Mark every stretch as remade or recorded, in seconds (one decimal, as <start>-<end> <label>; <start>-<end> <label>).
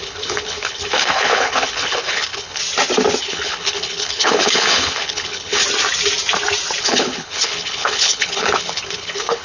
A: 0.0-2.6 remade; 2.6-3.2 recorded; 3.2-5.6 remade; 5.6-6.8 recorded; 6.8-9.4 remade